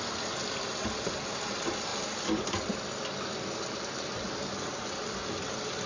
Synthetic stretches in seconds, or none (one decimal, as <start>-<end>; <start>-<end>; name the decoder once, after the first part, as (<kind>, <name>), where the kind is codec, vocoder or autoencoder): none